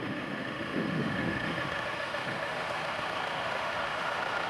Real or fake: fake